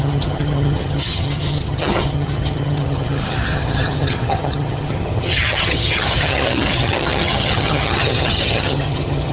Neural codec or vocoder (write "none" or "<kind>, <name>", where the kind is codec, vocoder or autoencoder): vocoder, HiFi-GAN